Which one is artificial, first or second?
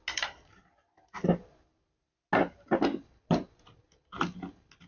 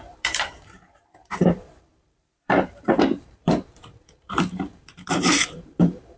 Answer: second